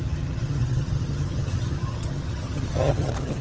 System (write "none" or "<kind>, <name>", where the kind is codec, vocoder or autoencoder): vocoder, HiFi-GAN